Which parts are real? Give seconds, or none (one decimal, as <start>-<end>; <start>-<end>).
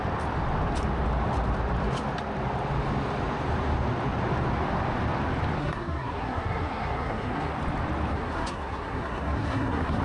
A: 0.0-5.6; 7.5-8.1